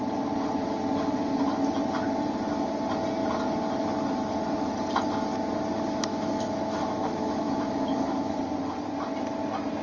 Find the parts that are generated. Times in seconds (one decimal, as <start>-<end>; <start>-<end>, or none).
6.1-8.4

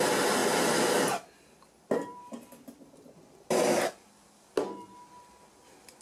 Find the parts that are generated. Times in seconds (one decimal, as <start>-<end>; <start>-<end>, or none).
none

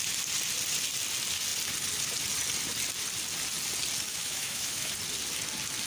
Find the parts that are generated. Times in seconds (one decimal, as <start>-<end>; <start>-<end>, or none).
4.1-4.9